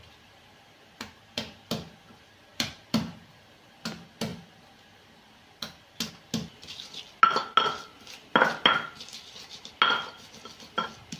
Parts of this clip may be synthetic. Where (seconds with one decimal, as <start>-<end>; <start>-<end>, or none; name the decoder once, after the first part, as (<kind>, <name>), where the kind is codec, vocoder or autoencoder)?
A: 0.5-1.9 (vocoder, BigVGAN v2); 2.5-3.0